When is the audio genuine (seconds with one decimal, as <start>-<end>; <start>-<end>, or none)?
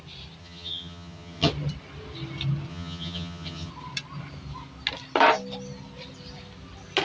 0.0-0.4; 1.5-2.7; 3.7-7.0